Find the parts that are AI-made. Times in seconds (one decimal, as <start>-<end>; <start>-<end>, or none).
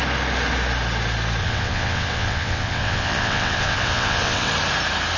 1.4-4.5